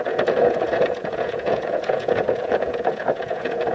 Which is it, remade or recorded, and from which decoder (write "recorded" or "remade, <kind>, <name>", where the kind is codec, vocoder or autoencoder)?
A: remade, vocoder, Vocos